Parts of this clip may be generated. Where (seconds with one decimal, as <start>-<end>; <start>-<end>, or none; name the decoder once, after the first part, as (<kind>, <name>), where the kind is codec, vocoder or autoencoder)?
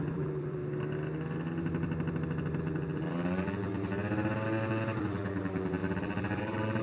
0.0-0.6 (vocoder, BigVGAN v2); 2.6-3.7; 5.0-6.8